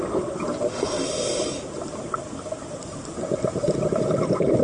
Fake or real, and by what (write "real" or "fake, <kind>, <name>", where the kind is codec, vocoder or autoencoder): real